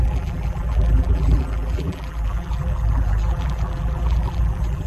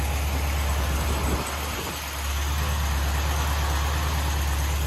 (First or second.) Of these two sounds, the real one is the second